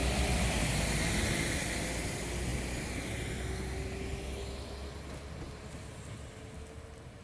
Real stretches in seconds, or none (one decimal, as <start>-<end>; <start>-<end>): 0.0-7.2